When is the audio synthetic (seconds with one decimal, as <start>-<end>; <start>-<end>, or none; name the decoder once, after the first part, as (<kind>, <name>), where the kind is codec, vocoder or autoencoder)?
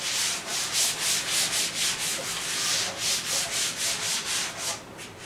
none